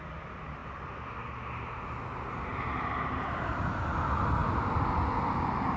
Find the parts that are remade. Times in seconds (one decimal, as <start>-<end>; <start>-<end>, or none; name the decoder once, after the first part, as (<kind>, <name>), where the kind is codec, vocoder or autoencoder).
2.5-3.8 (vocoder, BigVGAN v2)